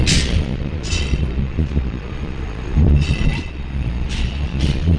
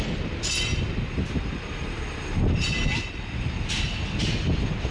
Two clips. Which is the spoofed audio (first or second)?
first